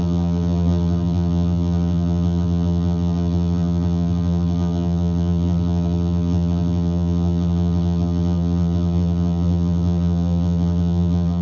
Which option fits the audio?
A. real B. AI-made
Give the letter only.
B